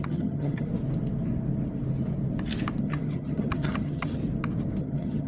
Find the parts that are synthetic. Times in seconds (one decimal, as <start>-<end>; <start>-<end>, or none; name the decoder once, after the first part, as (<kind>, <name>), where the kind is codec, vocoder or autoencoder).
0.0-0.7 (vocoder, HiFi-GAN); 2.8-4.2; 4.8-5.3